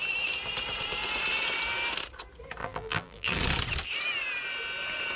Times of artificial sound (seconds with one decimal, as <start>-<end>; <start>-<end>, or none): 2.6-3.4